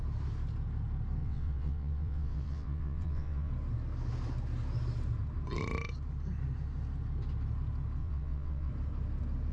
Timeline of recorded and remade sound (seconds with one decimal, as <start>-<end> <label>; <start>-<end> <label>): 0.0-1.2 recorded; 1.2-3.5 remade; 3.5-8.0 recorded; 8.0-8.7 remade; 8.7-9.5 recorded